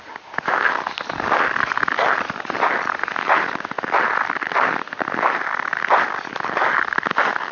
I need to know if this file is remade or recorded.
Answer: recorded